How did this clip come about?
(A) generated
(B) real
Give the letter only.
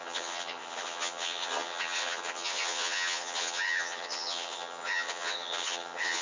A